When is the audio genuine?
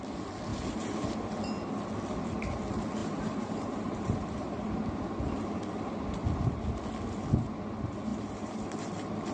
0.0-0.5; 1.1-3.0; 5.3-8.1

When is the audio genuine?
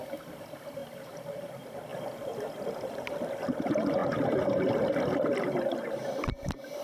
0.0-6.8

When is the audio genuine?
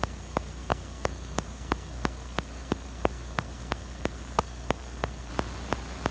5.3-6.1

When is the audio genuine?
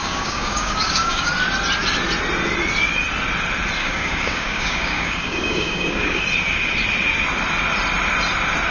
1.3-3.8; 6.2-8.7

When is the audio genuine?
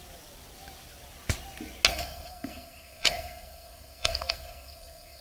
0.0-1.9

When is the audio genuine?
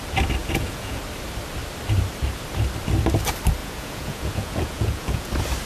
0.0-0.4; 1.0-3.6; 5.3-5.7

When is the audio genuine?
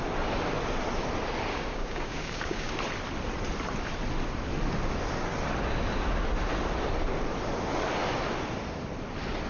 0.0-1.5; 2.7-9.5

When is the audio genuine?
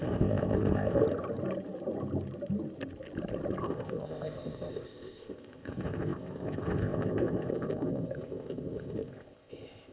1.0-3.6